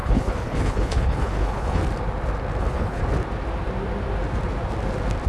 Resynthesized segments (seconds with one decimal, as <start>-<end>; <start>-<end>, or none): 0.0-1.8; 2.6-3.0